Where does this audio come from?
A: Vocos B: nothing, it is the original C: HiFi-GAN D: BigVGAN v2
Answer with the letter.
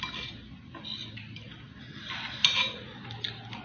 B